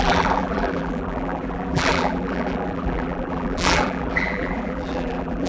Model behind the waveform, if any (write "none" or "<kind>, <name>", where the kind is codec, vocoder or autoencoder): vocoder, BigVGAN v2